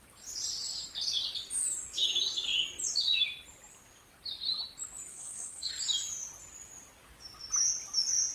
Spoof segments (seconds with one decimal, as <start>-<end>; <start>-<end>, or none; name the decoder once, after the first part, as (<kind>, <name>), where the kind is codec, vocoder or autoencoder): 5.1-5.7 (codec, SNAC)